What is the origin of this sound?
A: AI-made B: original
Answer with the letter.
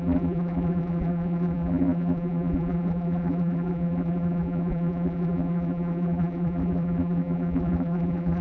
A